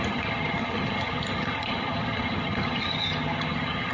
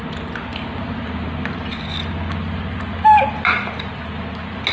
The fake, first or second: first